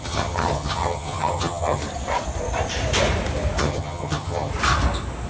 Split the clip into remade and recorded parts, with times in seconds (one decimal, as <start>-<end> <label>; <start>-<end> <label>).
0.0-1.8 remade; 1.8-3.6 recorded; 3.6-4.5 remade; 4.5-5.3 recorded